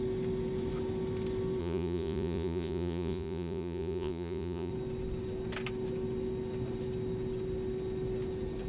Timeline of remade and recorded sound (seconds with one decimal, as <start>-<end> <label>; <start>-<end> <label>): 0.0-1.6 recorded; 1.6-4.7 remade; 4.7-8.7 recorded